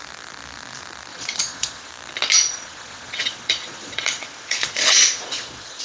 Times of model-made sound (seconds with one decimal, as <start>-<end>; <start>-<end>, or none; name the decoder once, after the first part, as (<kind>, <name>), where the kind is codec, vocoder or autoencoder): 1.1-1.9 (vocoder, Vocos); 2.4-5.8